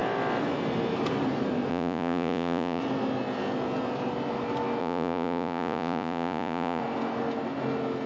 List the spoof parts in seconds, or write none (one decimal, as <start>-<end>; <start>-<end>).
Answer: 1.7-2.8; 4.8-6.8